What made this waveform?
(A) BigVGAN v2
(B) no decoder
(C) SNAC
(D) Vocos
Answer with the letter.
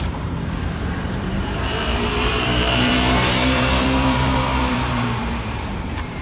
A